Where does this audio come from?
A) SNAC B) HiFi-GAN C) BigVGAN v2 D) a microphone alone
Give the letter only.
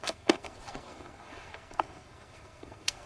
A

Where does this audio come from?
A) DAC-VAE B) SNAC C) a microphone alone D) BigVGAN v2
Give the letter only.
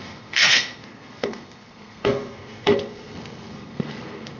B